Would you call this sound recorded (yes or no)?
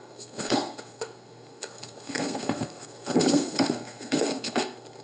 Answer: no